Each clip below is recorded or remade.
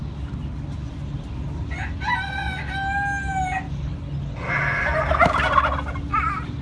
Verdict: recorded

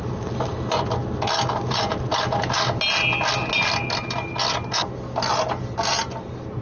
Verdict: recorded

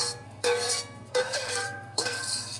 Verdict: remade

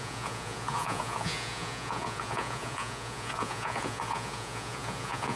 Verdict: remade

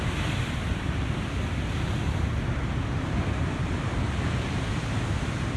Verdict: recorded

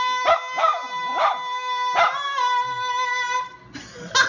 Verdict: recorded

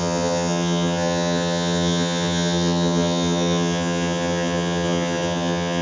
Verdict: remade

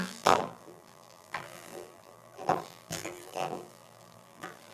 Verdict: remade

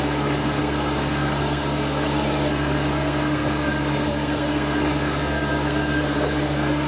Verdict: remade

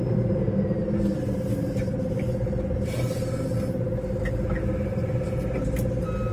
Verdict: recorded